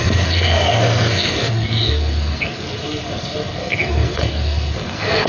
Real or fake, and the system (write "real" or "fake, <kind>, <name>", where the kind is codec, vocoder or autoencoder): fake, codec, SNAC